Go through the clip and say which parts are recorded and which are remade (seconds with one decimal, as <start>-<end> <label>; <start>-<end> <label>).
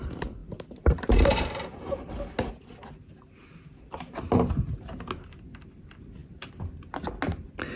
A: 0.0-0.4 recorded; 0.4-2.1 remade; 2.1-7.8 recorded